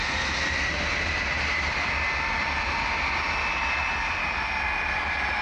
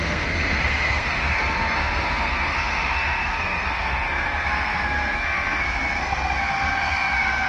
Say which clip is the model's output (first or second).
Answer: second